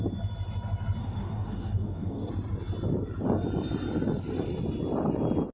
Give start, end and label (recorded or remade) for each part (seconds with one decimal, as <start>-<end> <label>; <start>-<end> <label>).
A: 0.0-1.0 recorded; 1.0-2.3 remade; 2.3-5.5 recorded